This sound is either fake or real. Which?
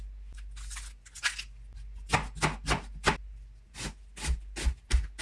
real